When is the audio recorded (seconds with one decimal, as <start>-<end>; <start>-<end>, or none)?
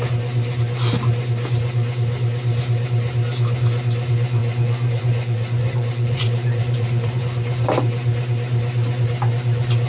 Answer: 0.0-4.4; 7.2-9.9